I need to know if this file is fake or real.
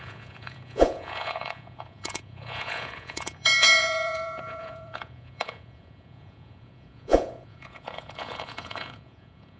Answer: fake